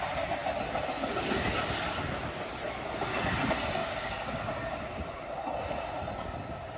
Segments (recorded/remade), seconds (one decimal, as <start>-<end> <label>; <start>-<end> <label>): 0.0-3.8 recorded; 3.8-4.4 remade; 4.4-6.8 recorded